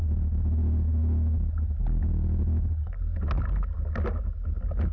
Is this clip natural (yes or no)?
yes